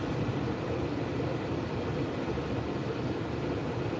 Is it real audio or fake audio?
real